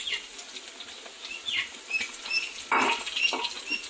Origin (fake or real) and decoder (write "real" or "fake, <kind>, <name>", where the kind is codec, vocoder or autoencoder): real